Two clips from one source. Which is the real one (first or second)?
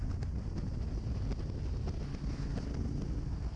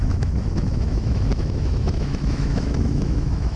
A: first